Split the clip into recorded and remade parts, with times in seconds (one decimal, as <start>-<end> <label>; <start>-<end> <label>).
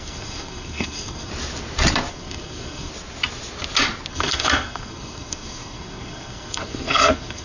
0.0-1.3 remade; 1.3-2.1 recorded; 2.1-2.9 remade; 2.9-4.1 recorded; 4.1-7.4 remade